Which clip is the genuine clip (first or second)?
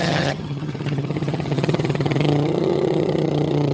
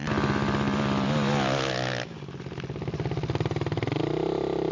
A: second